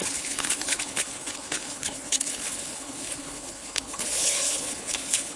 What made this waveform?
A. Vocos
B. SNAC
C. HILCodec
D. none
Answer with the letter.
C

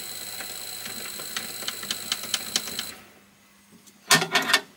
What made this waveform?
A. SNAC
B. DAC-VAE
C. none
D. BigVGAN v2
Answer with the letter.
C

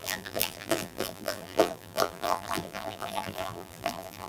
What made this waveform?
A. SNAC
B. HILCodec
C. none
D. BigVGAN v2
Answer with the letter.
D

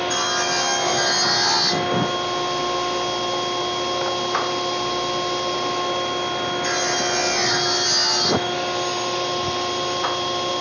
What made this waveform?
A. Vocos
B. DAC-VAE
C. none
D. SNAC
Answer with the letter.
C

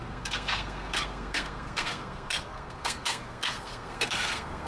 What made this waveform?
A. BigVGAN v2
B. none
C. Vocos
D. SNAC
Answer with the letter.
D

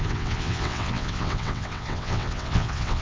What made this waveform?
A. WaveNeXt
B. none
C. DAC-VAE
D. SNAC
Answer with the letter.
A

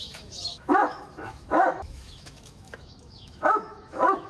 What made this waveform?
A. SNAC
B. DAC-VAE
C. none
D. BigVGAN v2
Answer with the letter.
B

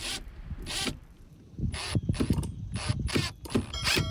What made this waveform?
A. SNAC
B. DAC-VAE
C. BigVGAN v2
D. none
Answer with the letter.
C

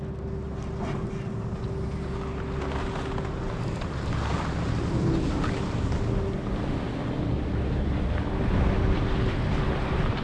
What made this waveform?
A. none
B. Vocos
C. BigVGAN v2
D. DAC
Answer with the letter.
A